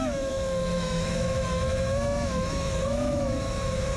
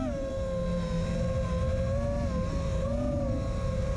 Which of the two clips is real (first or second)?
second